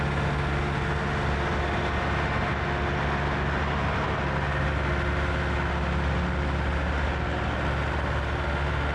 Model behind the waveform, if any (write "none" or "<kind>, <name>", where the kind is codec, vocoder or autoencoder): none